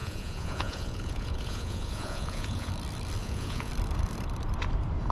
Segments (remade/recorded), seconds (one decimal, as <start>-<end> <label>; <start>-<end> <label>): 0.0-2.7 remade; 2.7-3.2 recorded; 3.2-3.7 remade; 3.7-5.1 recorded